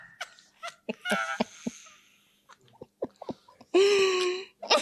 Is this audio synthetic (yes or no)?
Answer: no